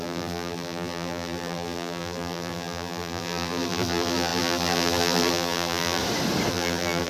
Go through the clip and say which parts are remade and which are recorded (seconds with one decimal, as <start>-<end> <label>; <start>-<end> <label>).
0.0-6.0 remade; 6.0-6.5 recorded; 6.5-7.1 remade